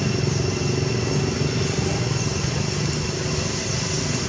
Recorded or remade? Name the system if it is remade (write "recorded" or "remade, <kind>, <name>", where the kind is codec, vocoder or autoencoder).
recorded